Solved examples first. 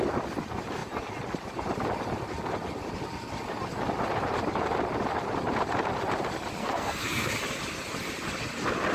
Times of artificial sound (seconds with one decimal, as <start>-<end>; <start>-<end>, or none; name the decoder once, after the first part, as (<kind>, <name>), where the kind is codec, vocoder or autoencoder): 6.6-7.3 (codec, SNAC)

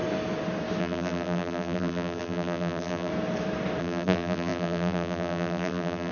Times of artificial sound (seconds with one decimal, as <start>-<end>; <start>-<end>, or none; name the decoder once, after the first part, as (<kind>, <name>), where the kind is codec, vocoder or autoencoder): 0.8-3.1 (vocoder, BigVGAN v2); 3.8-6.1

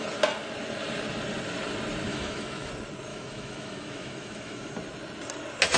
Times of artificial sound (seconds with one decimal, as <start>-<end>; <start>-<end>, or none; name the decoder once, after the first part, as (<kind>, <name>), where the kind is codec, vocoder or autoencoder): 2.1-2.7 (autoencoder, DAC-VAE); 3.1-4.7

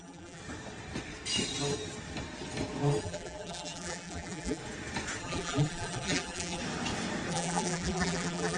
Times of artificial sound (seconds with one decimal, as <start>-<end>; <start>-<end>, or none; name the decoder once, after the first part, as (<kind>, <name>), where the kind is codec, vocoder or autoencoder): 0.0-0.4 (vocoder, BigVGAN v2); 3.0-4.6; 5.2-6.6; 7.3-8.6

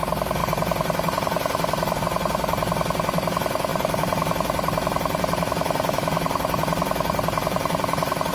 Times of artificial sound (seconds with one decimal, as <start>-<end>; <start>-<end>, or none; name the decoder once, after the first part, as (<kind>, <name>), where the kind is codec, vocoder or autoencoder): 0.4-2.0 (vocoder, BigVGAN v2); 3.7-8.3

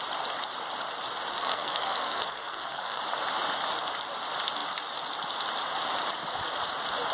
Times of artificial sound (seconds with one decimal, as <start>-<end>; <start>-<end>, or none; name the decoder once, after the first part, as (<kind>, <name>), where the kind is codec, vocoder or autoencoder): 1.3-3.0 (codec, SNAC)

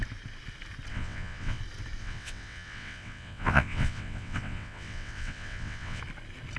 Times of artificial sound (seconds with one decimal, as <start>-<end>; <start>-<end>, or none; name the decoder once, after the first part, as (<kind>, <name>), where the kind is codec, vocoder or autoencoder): 0.9-1.6 (vocoder, WaveNeXt); 2.0-6.0